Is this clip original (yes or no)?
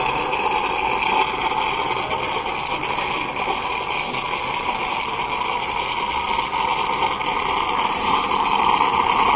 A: yes